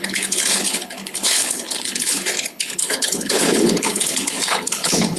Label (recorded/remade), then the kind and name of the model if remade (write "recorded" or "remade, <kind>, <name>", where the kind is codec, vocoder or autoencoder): remade, codec, HILCodec